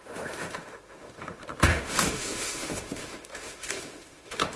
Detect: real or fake fake